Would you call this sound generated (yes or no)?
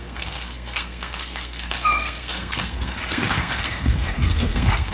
yes